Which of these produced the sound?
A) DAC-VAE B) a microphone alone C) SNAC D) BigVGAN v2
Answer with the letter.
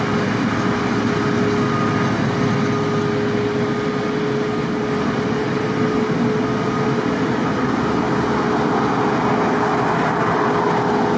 B